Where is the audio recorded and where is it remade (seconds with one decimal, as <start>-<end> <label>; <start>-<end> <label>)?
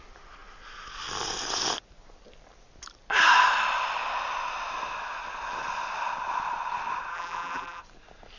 0.0-7.1 recorded; 7.1-7.8 remade; 7.8-8.4 recorded